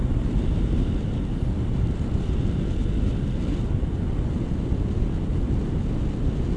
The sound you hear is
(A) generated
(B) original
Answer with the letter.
B